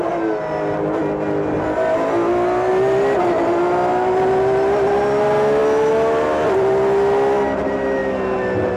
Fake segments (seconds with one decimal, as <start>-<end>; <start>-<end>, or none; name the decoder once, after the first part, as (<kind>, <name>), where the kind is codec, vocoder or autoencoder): none